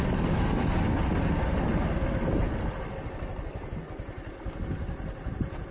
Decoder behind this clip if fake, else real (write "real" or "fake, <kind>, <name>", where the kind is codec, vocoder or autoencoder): real